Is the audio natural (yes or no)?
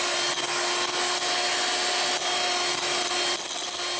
yes